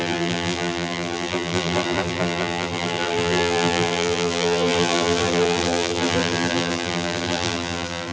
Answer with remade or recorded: remade